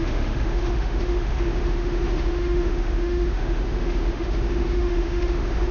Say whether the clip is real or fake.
fake